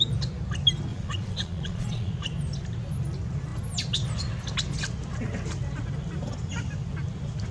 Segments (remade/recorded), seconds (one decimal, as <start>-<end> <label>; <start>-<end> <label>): 0.0-0.9 recorded; 0.9-2.1 remade; 2.1-7.5 recorded

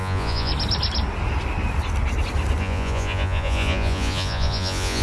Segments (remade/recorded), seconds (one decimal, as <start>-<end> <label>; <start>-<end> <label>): 0.0-0.5 remade; 0.5-2.6 recorded; 2.6-5.0 remade

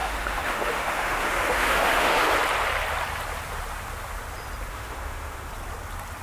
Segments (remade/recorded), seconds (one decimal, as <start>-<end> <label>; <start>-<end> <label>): 0.0-2.3 remade; 2.3-4.7 recorded; 4.7-5.5 remade; 5.5-6.2 recorded

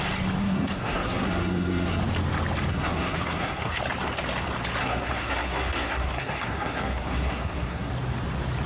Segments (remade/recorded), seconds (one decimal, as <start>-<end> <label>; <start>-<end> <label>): 0.0-0.4 recorded; 0.4-2.0 remade; 2.0-2.7 recorded; 2.7-3.8 remade; 3.8-4.8 recorded; 4.8-7.9 remade; 7.9-8.7 recorded

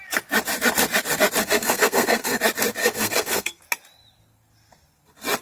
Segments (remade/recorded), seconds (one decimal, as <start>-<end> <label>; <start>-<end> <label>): 0.0-1.4 recorded; 1.4-2.4 remade; 2.4-2.8 recorded; 2.8-3.6 remade; 3.6-5.4 recorded

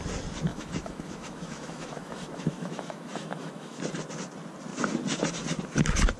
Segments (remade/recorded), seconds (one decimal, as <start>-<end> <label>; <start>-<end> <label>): 0.0-0.5 recorded; 0.5-3.8 remade; 3.8-6.2 recorded

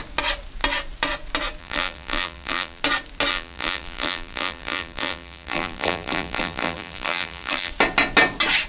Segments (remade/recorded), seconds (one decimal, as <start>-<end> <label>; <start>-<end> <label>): 0.0-1.6 recorded; 1.6-2.8 remade; 2.8-3.3 recorded; 3.3-7.7 remade; 7.7-8.7 recorded